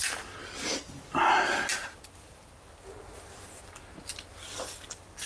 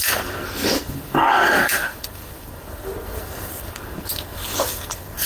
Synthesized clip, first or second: second